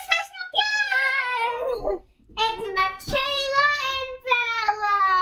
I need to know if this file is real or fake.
fake